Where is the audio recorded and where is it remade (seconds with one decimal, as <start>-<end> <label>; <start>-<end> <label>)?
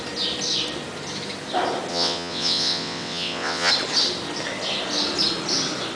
0.0-1.9 recorded; 1.9-3.7 remade; 3.7-6.0 recorded